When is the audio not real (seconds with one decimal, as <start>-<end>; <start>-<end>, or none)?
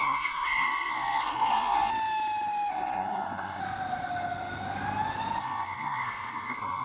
0.0-1.9; 2.7-3.6; 5.4-6.8